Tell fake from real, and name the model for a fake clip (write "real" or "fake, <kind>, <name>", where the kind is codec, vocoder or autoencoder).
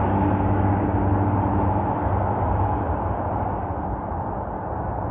real